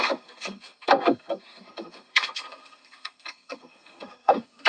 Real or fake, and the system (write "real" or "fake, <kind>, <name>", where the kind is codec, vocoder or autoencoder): fake, codec, SNAC